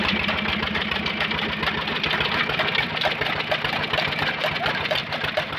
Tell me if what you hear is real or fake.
real